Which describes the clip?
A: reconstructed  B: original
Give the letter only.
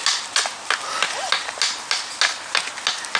B